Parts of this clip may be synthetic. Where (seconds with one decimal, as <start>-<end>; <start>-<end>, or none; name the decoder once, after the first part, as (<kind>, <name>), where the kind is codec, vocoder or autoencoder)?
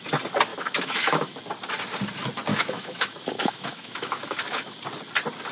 0.5-1.4 (autoencoder, DAC-VAE); 2.5-4.7